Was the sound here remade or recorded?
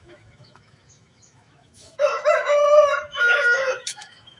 remade